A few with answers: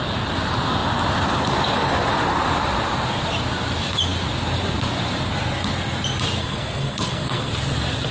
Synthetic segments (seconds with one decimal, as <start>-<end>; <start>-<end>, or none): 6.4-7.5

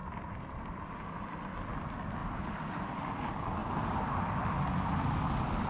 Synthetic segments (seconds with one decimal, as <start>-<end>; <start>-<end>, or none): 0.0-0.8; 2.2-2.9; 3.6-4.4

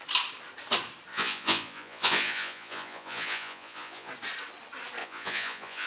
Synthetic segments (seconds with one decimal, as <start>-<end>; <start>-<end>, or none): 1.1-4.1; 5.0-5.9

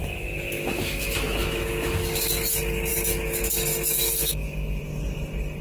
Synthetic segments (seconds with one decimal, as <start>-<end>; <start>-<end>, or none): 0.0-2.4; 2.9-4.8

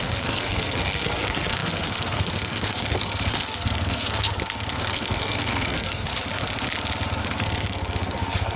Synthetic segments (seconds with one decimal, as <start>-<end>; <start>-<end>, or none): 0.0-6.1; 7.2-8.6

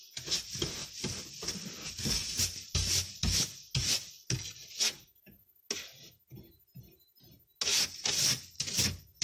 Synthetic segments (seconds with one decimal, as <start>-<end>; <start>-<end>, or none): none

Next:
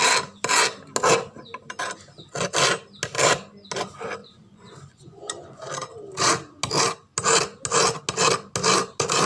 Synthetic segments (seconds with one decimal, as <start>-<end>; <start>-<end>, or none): 4.2-5.7

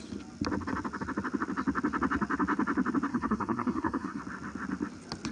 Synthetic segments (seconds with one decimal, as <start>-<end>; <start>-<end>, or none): 3.1-4.2